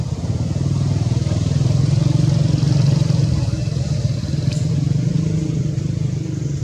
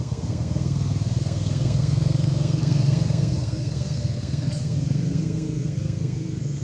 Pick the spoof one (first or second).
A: second